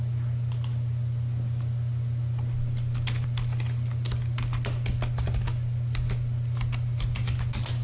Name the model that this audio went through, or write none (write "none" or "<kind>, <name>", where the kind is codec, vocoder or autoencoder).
none